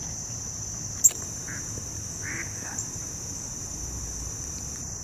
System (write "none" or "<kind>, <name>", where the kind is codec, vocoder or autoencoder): vocoder, BigVGAN v2